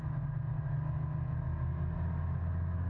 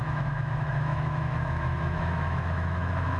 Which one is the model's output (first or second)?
second